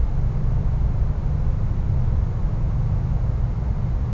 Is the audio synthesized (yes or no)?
no